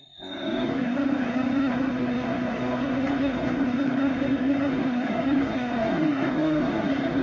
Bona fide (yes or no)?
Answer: no